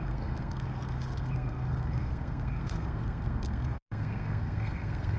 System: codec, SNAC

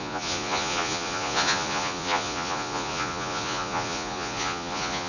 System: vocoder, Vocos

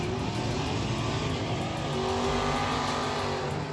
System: none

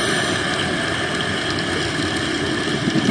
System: none